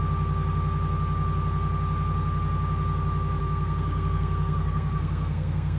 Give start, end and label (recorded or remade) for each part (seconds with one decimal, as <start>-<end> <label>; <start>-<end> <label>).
0.0-3.4 recorded; 3.4-5.8 remade